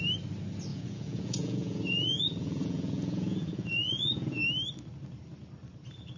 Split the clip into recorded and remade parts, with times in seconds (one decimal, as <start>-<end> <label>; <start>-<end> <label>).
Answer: 0.0-0.7 recorded; 0.7-4.4 remade; 4.4-6.2 recorded